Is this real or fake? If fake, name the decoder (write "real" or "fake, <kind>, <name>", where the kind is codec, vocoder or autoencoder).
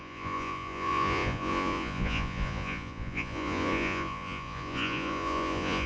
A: fake, vocoder, Vocos